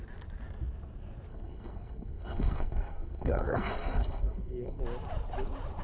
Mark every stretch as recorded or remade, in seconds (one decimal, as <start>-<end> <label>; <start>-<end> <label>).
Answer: 0.0-1.3 recorded; 1.3-4.8 remade; 4.8-5.8 recorded